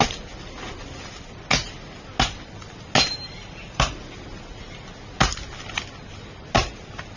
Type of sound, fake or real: real